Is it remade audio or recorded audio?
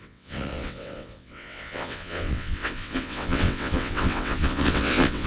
remade